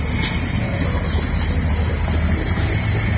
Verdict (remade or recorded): recorded